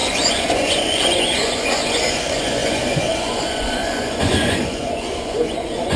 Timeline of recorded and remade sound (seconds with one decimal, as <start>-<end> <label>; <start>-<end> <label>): 0.0-6.0 remade